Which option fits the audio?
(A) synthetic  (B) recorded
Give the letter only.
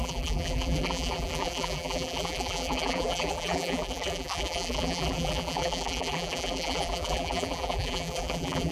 A